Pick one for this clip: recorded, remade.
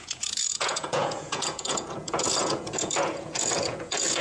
remade